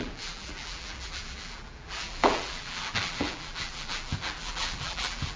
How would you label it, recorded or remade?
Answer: remade